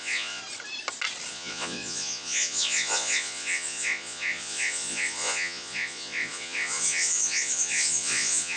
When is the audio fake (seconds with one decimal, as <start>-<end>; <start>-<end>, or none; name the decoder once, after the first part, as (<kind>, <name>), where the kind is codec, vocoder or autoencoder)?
0.0-0.4 (vocoder, Vocos); 1.3-8.6